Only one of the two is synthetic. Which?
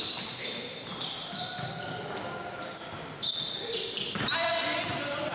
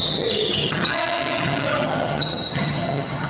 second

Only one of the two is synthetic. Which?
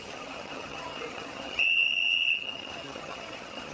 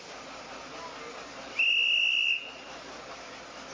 first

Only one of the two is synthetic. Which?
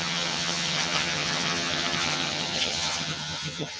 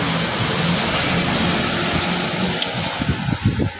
first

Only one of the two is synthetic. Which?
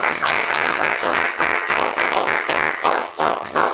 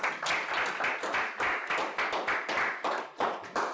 first